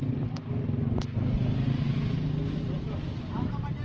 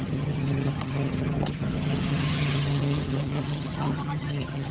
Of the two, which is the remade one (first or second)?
second